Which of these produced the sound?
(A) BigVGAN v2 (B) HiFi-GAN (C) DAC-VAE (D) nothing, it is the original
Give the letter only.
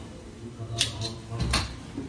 D